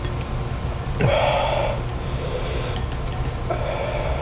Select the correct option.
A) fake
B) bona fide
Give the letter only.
B